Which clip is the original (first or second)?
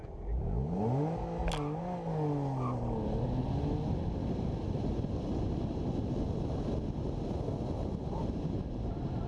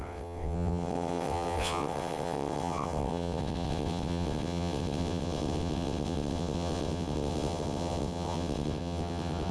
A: first